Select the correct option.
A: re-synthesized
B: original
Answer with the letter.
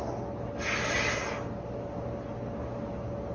B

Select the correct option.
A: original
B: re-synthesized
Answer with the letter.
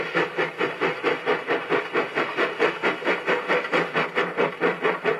A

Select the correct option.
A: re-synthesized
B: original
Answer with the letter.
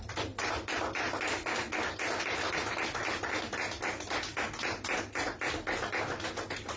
B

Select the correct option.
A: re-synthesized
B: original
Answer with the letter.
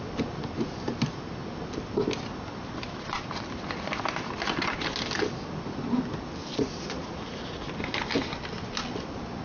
B